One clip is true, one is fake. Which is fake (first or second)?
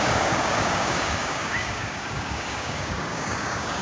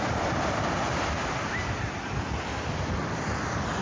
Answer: first